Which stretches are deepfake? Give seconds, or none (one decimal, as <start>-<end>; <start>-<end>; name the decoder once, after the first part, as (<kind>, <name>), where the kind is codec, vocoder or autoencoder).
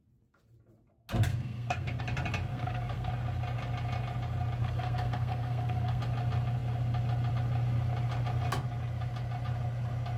1.3-2.0 (codec, SNAC); 2.5-3.1; 4.6-6.0